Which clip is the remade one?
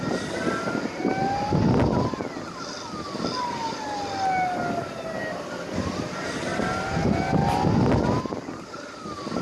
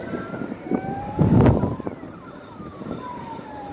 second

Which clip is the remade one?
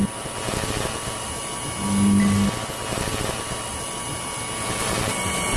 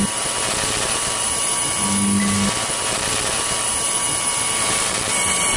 second